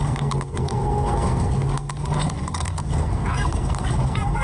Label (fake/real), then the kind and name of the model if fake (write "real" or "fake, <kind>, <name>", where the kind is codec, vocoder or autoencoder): fake, codec, SNAC